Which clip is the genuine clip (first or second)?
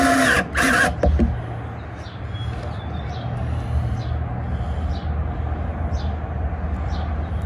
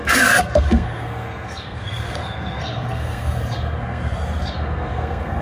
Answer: first